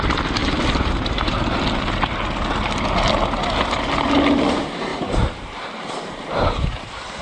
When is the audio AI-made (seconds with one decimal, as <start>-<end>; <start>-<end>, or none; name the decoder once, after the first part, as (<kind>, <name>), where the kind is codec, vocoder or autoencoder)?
0.4-1.4 (vocoder, BigVGAN v2); 4.9-7.2